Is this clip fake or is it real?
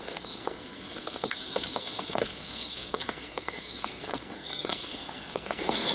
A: fake